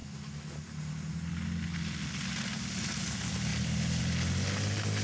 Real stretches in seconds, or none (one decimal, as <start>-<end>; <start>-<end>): 0.0-5.0